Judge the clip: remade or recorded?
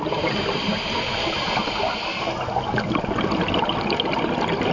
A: recorded